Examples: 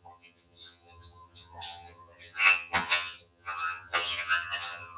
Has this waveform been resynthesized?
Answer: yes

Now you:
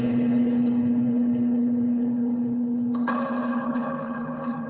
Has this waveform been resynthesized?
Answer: yes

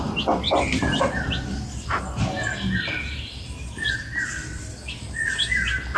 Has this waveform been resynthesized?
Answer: no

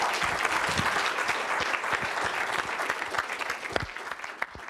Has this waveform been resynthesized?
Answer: no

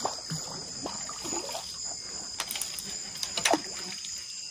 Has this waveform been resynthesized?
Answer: no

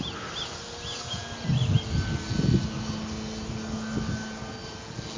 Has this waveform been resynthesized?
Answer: no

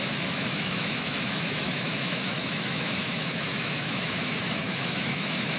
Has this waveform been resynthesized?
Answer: yes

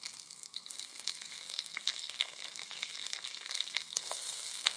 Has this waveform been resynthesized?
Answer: yes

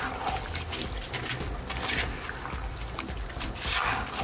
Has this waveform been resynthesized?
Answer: no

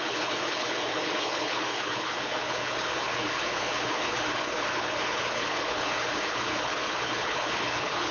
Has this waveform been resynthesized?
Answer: yes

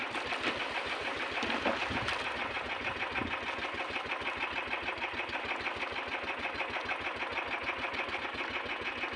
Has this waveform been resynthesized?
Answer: no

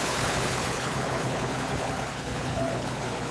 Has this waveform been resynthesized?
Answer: yes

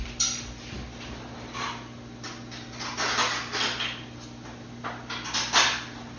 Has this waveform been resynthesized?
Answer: no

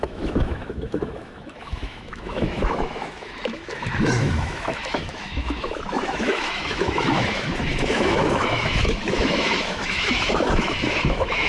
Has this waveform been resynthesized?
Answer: yes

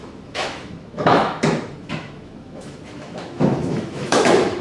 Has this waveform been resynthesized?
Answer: yes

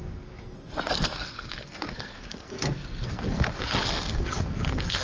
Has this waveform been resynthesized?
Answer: yes